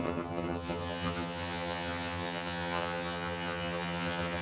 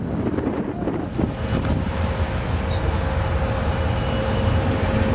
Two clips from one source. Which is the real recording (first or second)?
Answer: second